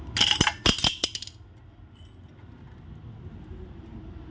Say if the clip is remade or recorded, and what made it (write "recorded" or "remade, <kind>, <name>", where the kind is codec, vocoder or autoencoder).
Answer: recorded